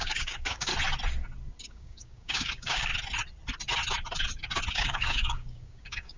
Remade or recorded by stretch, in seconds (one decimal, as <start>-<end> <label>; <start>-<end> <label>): 0.0-0.7 remade; 0.7-1.6 recorded; 1.6-2.9 remade; 2.9-4.7 recorded; 4.7-6.2 remade